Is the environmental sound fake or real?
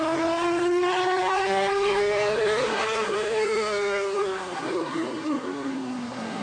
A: fake